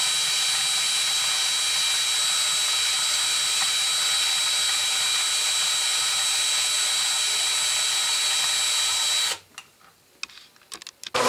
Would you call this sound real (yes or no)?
yes